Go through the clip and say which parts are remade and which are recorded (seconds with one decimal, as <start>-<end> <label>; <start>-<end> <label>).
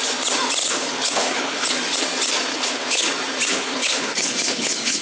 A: 0.0-0.6 recorded; 0.6-1.7 remade; 1.7-2.5 recorded; 2.5-3.1 remade; 3.1-3.5 recorded; 3.5-5.0 remade